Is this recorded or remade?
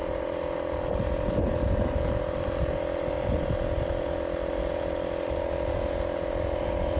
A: recorded